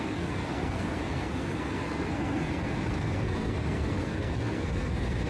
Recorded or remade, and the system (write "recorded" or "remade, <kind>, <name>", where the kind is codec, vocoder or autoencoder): remade, codec, SNAC